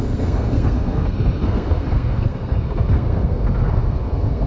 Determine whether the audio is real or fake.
fake